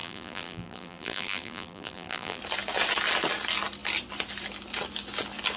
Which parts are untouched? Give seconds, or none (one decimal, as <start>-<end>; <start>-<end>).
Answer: 2.4-5.6